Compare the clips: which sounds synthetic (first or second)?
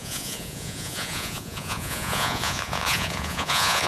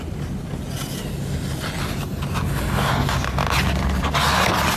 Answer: first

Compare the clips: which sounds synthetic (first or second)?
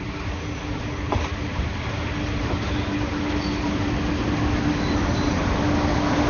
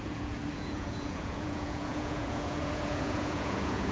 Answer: second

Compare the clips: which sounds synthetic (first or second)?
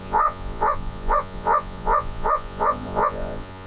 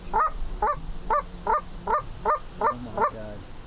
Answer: first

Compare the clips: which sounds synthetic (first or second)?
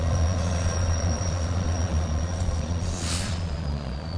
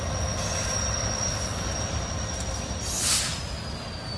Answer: first